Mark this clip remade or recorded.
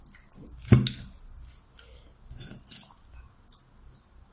recorded